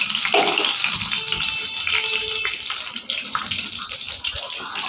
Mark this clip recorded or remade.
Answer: recorded